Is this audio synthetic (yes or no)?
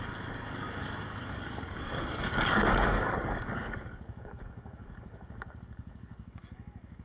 yes